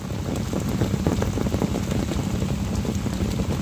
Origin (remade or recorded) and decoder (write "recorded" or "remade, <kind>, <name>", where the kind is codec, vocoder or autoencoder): recorded